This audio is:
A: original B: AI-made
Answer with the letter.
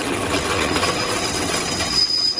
B